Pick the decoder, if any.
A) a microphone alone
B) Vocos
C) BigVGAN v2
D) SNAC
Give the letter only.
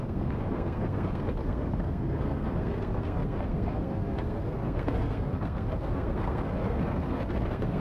D